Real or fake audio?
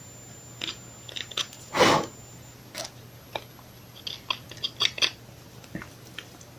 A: real